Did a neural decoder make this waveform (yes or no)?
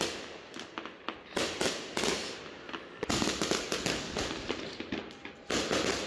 no